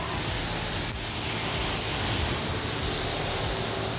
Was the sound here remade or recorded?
recorded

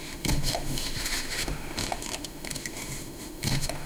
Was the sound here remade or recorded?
remade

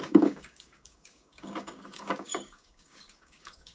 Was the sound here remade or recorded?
remade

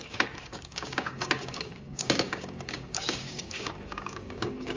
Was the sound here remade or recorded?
remade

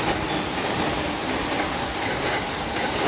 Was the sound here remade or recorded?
recorded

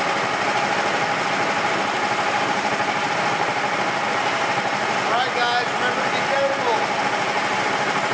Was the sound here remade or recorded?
recorded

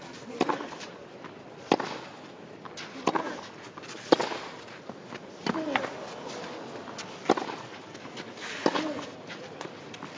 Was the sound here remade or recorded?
recorded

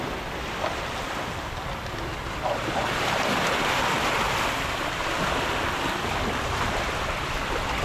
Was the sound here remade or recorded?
remade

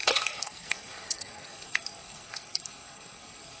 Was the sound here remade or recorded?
remade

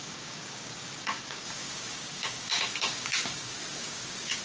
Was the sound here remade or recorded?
remade